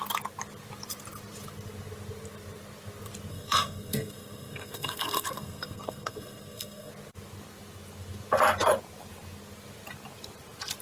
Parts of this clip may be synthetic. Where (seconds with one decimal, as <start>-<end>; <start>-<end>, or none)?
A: 3.3-6.9